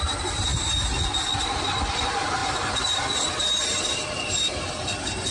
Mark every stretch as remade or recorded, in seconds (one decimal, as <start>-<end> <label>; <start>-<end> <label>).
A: 0.0-2.4 recorded; 2.4-4.7 remade; 4.7-5.3 recorded